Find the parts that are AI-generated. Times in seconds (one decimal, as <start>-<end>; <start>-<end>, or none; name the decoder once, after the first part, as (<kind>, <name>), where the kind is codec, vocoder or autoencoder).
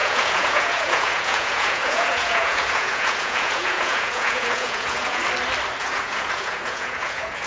0.0-5.2 (vocoder, Vocos); 5.8-7.5